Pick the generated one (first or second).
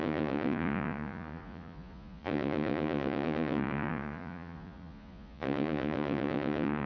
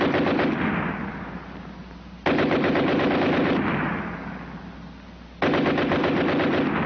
first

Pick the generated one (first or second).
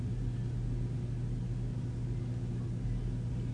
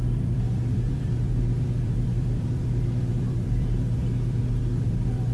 second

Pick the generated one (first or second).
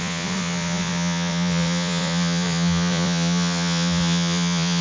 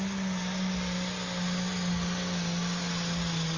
first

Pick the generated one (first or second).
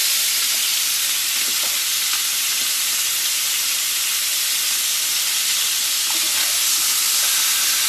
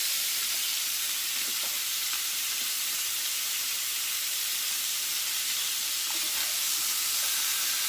second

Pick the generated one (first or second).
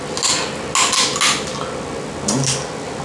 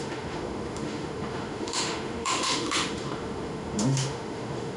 second